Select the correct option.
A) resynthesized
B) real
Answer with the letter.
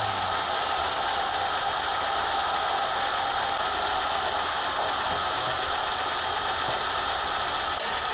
B